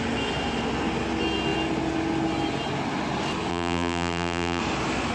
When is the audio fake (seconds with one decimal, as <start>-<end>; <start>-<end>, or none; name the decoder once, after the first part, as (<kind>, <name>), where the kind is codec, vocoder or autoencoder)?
3.5-4.6 (vocoder, BigVGAN v2)